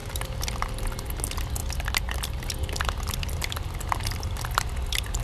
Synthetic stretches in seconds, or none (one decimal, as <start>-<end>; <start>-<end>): 0.0-0.8